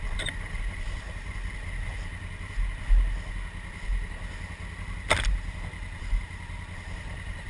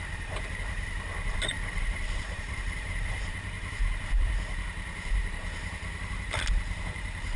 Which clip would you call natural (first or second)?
first